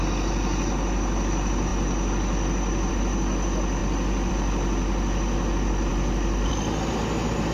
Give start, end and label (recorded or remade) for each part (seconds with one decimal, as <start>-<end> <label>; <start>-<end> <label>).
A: 0.0-7.5 recorded